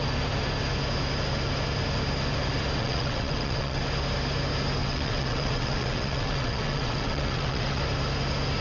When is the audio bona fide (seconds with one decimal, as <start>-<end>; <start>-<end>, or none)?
0.0-2.8; 3.8-4.8; 7.8-8.6